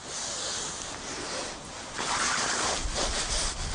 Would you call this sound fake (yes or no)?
no